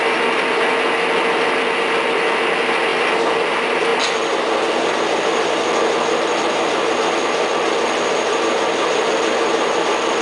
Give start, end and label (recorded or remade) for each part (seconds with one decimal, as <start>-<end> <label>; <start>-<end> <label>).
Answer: 0.0-2.9 recorded; 2.9-3.5 remade; 3.5-10.2 recorded